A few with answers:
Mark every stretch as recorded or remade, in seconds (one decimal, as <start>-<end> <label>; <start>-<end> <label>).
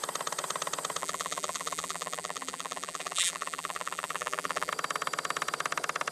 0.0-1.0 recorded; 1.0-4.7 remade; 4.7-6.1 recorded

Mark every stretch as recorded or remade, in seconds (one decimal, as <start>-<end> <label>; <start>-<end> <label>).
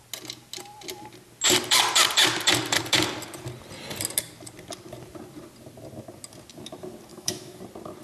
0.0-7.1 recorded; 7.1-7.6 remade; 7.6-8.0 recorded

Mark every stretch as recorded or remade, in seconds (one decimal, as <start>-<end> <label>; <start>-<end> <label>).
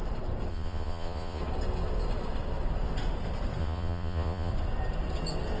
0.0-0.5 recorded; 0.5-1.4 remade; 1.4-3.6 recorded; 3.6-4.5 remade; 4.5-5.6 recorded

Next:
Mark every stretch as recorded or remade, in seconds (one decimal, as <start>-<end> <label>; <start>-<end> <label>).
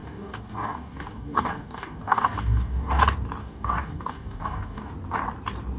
0.0-3.0 remade; 3.0-3.4 recorded; 3.4-4.9 remade; 4.9-5.8 recorded